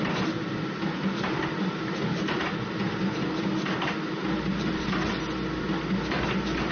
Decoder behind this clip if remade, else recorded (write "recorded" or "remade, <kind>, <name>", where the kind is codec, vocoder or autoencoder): recorded